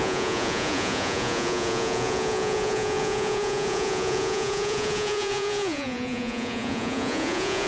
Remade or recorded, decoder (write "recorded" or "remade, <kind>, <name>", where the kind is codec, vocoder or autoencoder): remade, vocoder, Vocos